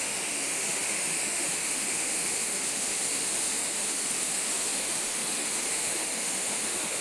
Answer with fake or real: fake